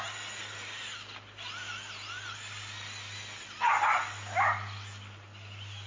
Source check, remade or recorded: recorded